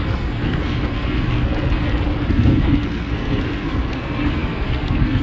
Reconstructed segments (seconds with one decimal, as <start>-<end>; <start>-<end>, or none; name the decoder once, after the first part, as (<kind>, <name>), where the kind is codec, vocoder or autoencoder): 0.0-1.5 (codec, SNAC); 2.3-5.2